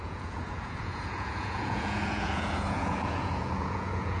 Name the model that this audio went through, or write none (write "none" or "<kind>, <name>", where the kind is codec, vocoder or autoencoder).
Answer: vocoder, Vocos